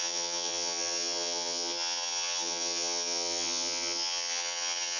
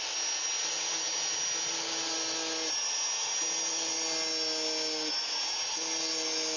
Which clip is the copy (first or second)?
first